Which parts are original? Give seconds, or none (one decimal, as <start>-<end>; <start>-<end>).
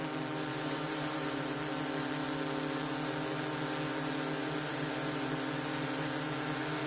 0.0-0.5; 1.6-4.4; 5.2-6.9